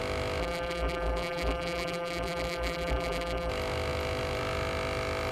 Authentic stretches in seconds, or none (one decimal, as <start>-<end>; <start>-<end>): 0.0-0.4; 3.5-5.3